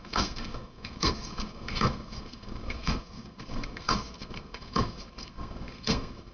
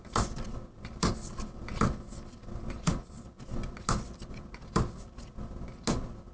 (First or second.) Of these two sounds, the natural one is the second